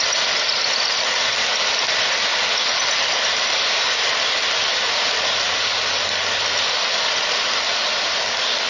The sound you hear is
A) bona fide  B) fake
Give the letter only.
A